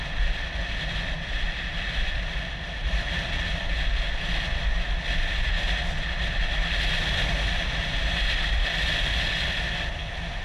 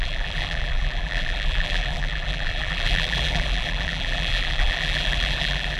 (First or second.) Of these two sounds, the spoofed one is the second